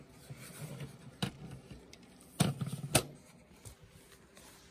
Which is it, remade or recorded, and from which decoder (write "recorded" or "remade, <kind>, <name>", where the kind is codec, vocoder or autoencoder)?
recorded